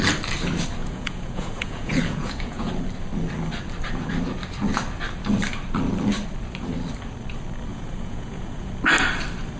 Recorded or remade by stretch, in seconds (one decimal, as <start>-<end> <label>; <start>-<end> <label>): 0.0-0.8 recorded; 0.8-2.7 remade; 2.7-7.7 recorded; 7.7-8.7 remade; 8.7-9.6 recorded